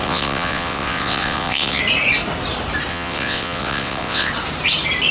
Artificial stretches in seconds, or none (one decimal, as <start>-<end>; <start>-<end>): 0.0-1.8; 2.9-4.3